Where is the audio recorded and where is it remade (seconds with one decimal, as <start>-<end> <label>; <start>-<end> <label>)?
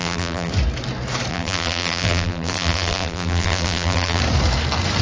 0.0-0.5 remade; 0.5-1.3 recorded; 1.3-4.2 remade; 4.2-5.0 recorded